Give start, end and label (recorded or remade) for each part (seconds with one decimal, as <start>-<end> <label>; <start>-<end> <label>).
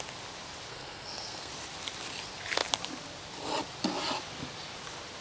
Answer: 0.0-0.7 recorded; 0.7-1.5 remade; 1.5-5.2 recorded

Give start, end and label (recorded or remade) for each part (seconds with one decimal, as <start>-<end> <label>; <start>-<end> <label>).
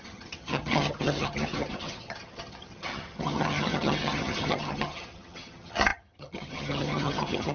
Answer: 0.0-7.5 remade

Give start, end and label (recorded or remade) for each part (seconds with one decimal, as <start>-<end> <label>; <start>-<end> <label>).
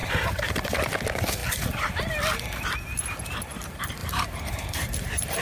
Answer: 0.0-1.0 remade; 1.0-4.0 recorded; 4.0-5.4 remade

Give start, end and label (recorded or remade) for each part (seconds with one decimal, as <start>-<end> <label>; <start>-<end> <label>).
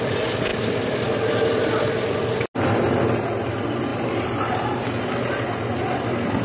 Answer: 0.0-0.5 recorded; 0.5-1.3 remade; 1.3-6.4 recorded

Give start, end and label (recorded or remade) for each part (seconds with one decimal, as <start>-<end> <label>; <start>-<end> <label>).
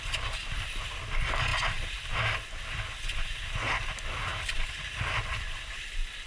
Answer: 0.0-6.3 recorded